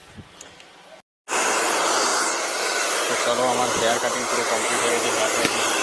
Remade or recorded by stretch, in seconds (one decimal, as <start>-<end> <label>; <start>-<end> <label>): 0.0-5.8 recorded